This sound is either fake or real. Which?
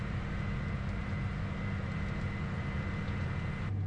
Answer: real